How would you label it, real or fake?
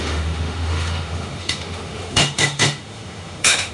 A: fake